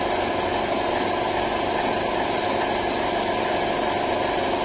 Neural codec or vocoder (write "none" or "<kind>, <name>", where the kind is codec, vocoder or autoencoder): none